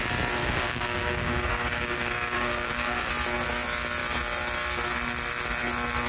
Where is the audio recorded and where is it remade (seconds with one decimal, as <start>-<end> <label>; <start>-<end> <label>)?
0.0-0.4 recorded; 0.4-3.1 remade; 3.1-6.1 recorded